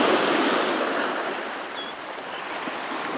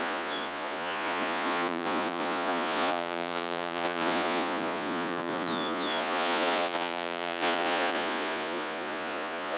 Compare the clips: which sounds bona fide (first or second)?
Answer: first